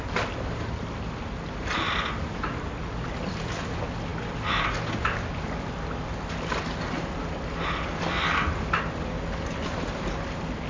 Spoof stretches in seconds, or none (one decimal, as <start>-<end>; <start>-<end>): none